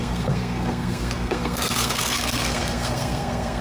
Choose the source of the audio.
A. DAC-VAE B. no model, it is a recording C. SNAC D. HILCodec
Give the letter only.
C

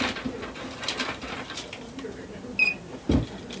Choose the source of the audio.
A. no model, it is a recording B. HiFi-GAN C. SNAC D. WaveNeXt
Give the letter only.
A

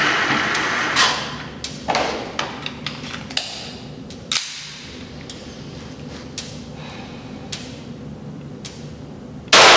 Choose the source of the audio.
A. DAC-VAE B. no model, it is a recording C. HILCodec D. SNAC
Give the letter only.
B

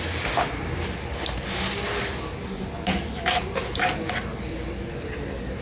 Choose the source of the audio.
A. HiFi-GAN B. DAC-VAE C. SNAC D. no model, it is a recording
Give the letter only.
D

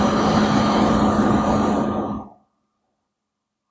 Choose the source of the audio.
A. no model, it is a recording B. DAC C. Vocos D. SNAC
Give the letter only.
A